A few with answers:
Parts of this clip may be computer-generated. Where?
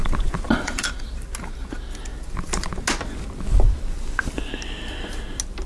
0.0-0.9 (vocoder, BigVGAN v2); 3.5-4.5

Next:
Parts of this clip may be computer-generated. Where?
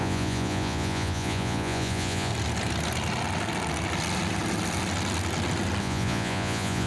0.0-2.3 (vocoder, Vocos); 5.8-6.9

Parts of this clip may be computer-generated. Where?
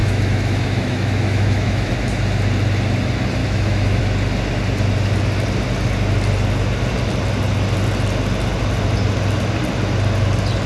0.0-1.9 (autoencoder, DAC-VAE); 3.4-4.0